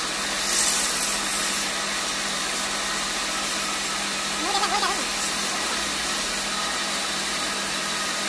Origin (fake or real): real